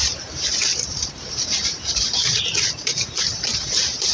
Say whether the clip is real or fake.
fake